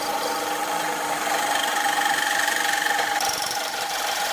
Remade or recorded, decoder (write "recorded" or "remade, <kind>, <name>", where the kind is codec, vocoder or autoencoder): remade, vocoder, BigVGAN v2